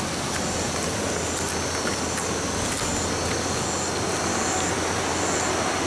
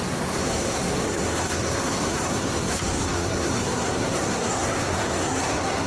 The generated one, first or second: second